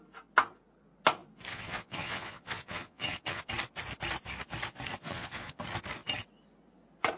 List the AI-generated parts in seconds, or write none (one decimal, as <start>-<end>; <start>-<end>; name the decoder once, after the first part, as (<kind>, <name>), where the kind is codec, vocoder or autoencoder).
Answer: 1.5-3.5 (vocoder, Vocos); 5.0-5.6